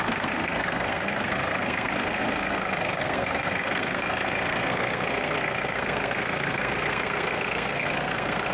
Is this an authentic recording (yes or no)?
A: no